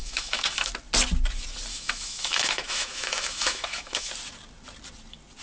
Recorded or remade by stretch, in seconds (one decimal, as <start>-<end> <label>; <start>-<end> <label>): 0.0-0.7 remade; 0.7-1.7 recorded; 1.7-4.1 remade; 4.1-5.4 recorded